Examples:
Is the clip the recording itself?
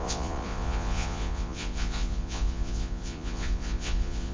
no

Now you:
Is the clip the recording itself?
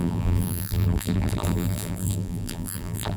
no